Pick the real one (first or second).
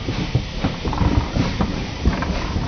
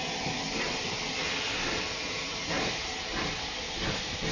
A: second